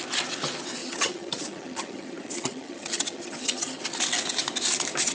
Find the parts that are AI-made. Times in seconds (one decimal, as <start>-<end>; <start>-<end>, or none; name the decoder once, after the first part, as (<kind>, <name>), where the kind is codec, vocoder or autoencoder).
0.8-3.8 (vocoder, HiFi-GAN)